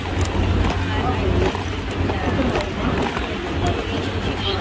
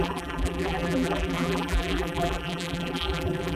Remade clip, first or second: second